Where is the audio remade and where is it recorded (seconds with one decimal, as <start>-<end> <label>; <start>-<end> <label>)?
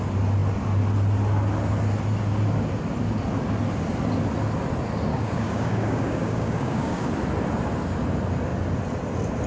0.0-5.1 recorded; 5.1-7.1 remade; 7.1-9.5 recorded